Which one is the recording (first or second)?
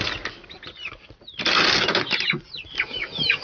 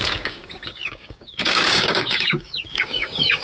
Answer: first